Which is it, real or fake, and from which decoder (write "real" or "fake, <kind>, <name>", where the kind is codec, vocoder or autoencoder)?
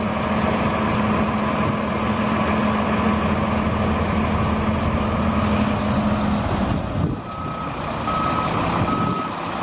real